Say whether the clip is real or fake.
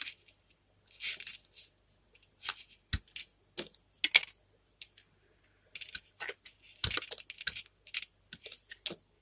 real